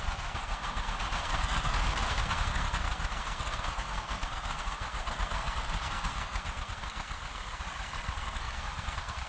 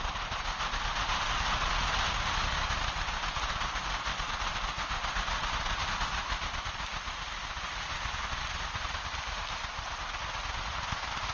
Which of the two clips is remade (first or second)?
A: first